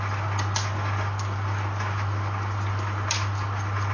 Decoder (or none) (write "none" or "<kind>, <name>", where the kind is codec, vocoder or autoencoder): none